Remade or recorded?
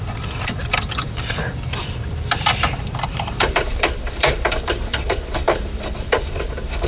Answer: remade